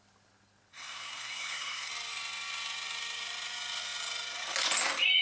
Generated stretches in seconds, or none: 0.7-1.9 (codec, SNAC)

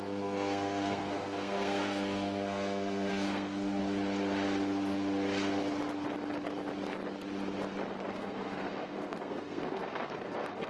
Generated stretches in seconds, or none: 0.0-3.8 (codec, SNAC); 8.1-10.7